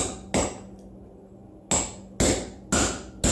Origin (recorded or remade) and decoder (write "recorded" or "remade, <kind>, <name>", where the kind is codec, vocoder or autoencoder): recorded